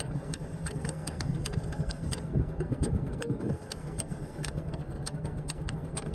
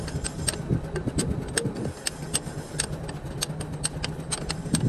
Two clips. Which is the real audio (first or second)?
second